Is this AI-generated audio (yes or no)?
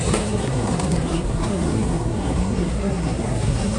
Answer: yes